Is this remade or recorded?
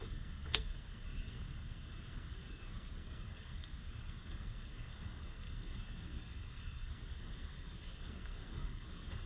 remade